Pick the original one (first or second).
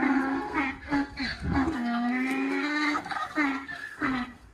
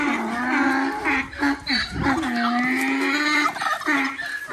second